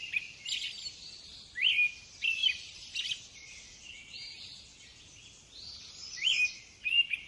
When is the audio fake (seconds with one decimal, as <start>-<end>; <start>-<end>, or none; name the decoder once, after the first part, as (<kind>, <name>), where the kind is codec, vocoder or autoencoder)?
2.4-3.2 (vocoder, BigVGAN v2)